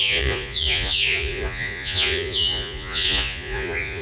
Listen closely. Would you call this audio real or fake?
fake